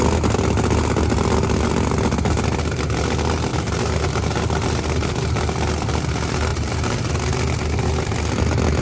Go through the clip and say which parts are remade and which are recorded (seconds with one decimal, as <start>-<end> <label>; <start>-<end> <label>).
0.0-3.5 recorded; 3.5-4.0 remade; 4.0-6.5 recorded; 6.5-7.1 remade; 7.1-8.8 recorded